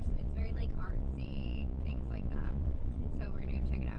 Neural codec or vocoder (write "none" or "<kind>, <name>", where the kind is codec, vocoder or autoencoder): vocoder, Vocos